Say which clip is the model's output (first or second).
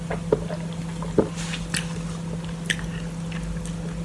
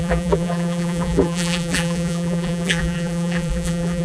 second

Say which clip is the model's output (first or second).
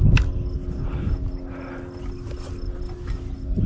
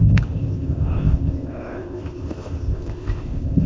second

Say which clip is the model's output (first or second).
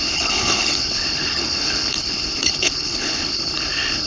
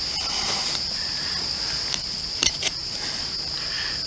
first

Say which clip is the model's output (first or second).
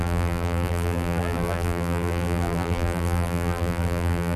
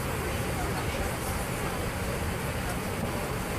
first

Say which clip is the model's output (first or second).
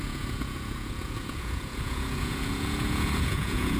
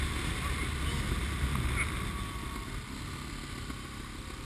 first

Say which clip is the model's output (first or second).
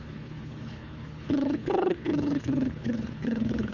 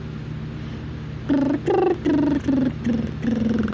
first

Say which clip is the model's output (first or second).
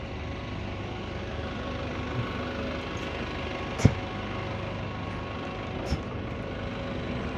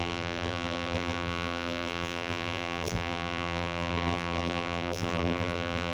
second